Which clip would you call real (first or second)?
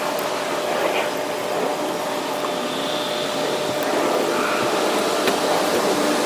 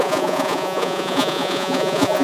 first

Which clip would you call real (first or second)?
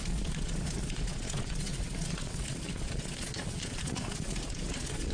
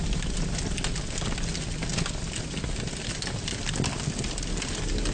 second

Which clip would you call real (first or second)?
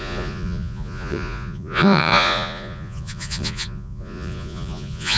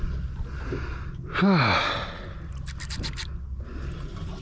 second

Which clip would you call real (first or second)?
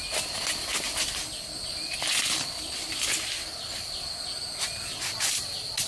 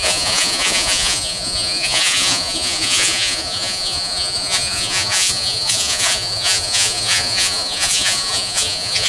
first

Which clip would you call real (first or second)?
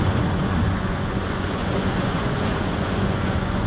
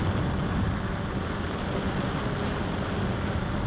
second